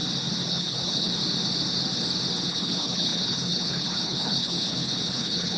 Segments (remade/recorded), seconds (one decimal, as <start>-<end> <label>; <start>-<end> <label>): 0.0-0.5 recorded; 0.5-1.1 remade; 1.1-2.5 recorded; 2.5-5.6 remade